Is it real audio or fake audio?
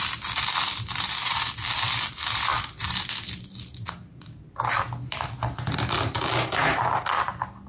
real